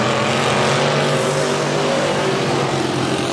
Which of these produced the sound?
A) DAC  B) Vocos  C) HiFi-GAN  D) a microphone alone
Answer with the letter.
D